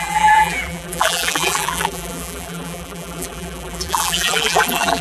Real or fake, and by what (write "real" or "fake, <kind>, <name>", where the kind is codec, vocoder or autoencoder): fake, vocoder, BigVGAN v2